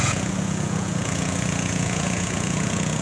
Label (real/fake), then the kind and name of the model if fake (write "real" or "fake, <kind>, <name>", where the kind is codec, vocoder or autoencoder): fake, vocoder, Vocos